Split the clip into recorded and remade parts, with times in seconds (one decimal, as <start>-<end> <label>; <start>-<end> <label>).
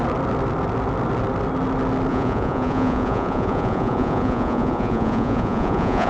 0.0-2.1 recorded; 2.1-6.1 remade